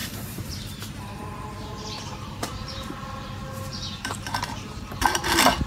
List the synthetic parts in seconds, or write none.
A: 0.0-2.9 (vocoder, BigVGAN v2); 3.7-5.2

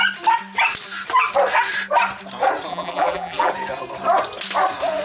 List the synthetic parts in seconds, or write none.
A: 2.7-3.5 (vocoder, BigVGAN v2)